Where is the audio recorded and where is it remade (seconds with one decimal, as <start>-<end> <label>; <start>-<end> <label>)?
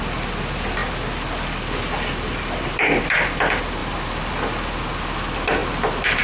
0.0-3.8 recorded; 3.8-4.3 remade; 4.3-5.6 recorded; 5.6-6.2 remade